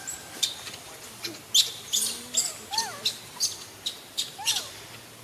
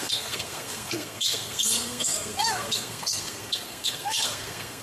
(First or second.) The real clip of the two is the first